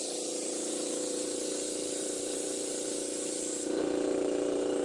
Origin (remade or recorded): remade